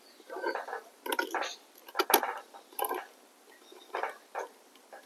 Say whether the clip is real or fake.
real